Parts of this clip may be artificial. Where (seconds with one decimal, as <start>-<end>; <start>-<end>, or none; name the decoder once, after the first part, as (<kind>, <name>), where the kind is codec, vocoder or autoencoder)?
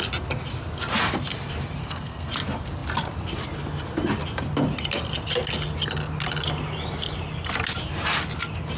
1.8-2.3 (codec, SNAC)